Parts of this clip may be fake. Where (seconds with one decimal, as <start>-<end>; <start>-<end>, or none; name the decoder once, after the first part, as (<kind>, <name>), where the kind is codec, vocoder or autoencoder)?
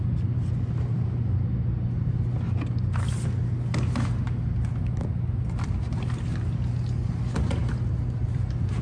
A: none